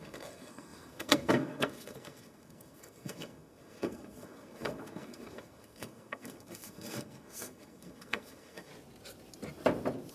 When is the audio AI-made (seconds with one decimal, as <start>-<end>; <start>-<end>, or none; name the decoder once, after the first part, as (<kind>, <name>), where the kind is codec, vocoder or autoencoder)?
0.0-8.7 (codec, SNAC)